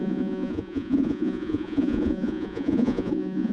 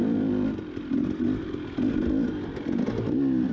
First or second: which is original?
second